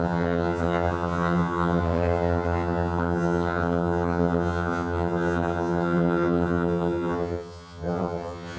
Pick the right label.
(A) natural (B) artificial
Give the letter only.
B